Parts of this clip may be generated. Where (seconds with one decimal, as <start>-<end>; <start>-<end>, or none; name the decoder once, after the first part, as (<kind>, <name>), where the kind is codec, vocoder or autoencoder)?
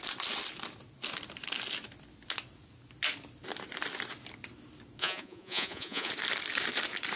5.0-6.1 (vocoder, Vocos)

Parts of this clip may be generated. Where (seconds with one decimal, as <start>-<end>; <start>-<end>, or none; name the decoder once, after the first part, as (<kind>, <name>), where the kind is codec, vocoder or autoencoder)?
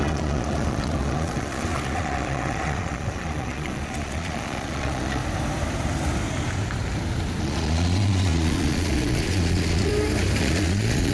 0.0-5.2 (vocoder, Vocos); 7.4-9.9; 10.4-11.1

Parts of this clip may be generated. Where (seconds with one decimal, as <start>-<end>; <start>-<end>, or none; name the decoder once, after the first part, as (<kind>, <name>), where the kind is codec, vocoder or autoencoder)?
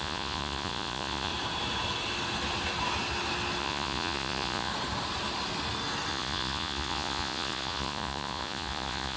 0.0-1.3 (vocoder, Vocos); 3.6-4.7; 6.1-9.2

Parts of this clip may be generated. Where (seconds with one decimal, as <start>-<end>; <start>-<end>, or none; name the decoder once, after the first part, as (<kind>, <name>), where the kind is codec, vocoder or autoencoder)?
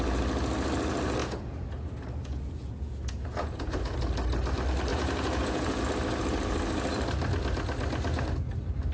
1.2-4.0 (vocoder, Vocos); 4.9-5.8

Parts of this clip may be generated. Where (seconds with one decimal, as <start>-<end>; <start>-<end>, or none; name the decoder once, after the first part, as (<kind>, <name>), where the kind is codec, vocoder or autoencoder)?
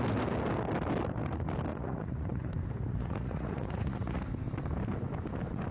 1.7-2.5 (vocoder, Vocos); 2.9-4.2